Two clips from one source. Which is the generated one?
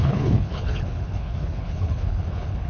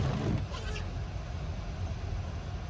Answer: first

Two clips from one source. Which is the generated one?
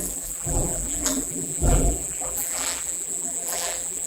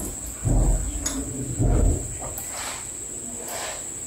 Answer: first